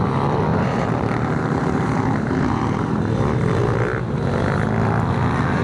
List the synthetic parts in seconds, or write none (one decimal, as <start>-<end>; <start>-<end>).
0.5-3.0

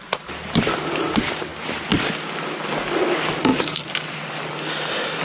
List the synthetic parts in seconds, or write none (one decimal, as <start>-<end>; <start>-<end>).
0.0-1.5; 3.1-3.5

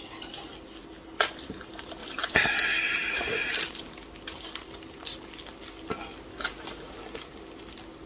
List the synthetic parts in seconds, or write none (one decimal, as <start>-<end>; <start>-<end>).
3.0-3.5

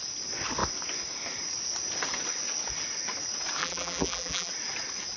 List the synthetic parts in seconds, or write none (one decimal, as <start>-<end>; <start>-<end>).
3.6-4.5

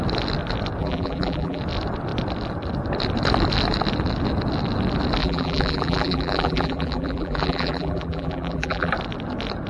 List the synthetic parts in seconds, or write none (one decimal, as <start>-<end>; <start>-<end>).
0.8-1.6; 5.2-8.9

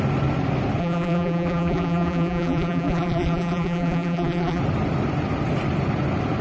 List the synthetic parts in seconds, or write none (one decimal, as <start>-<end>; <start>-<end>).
0.8-4.6

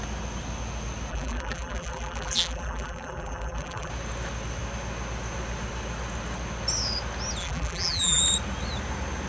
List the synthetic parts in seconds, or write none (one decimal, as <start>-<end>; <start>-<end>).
1.1-3.9; 7.4-8.2

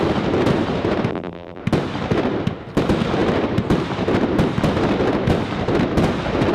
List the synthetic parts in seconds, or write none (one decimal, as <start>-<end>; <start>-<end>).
1.1-1.6